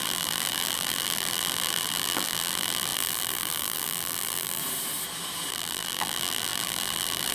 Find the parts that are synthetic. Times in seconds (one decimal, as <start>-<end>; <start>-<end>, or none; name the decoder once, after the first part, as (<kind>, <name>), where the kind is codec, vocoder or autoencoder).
0.0-4.6 (vocoder, BigVGAN v2); 5.5-7.3